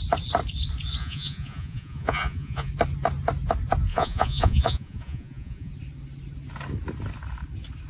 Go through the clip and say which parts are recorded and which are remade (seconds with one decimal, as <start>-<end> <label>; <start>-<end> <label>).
0.0-1.0 recorded; 1.0-2.7 remade; 2.7-3.9 recorded; 3.9-5.7 remade; 5.7-7.9 recorded